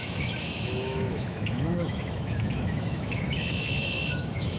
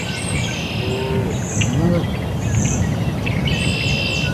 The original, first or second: second